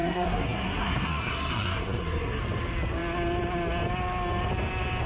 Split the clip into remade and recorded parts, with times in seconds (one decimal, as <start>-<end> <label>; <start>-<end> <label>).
0.0-2.4 remade; 2.4-5.1 recorded